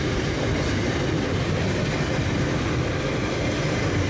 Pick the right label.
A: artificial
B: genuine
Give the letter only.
B